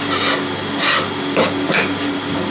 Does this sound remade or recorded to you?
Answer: recorded